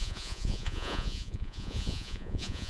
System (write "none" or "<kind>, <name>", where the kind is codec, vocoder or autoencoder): vocoder, Vocos